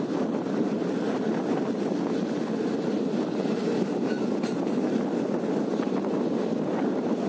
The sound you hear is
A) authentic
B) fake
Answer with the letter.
A